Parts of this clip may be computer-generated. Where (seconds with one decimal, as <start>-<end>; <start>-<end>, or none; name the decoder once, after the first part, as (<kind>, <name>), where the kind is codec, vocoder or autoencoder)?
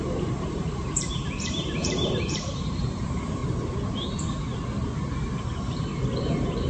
0.0-3.4 (vocoder, BigVGAN v2); 5.4-6.7